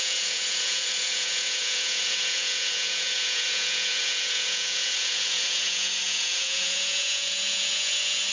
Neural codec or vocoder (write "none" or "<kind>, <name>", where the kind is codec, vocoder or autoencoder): vocoder, Vocos